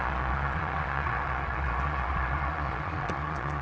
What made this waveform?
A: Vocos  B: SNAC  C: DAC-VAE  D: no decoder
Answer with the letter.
A